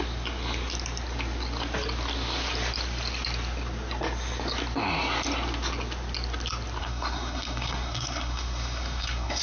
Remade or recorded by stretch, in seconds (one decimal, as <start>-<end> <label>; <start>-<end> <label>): 0.0-6.8 recorded; 6.8-9.4 remade